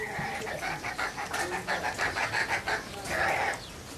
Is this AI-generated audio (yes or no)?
no